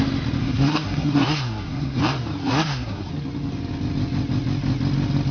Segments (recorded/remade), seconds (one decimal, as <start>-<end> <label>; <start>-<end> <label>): 0.0-0.4 recorded; 0.4-2.0 remade; 2.0-2.4 recorded; 2.4-3.1 remade; 3.1-5.3 recorded